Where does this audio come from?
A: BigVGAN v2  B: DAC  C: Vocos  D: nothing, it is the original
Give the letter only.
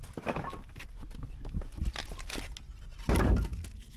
D